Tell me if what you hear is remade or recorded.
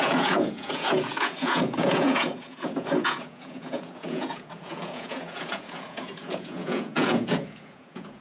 remade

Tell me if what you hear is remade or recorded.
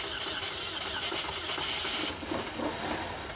recorded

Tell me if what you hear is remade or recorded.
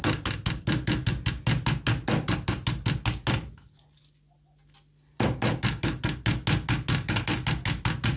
recorded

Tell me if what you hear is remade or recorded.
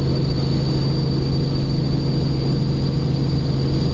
recorded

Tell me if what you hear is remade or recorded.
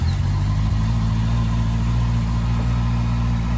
recorded